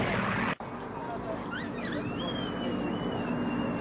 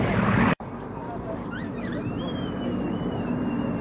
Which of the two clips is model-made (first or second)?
second